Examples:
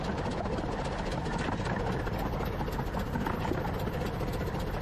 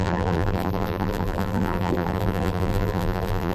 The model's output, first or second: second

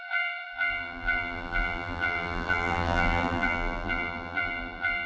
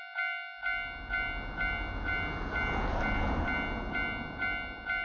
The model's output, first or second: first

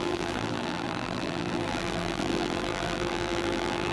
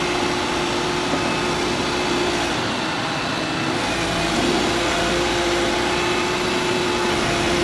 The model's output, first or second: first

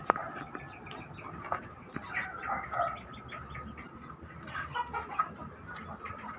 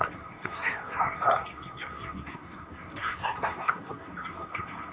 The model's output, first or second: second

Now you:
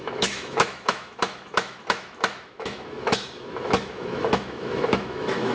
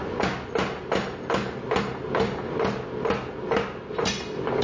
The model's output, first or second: first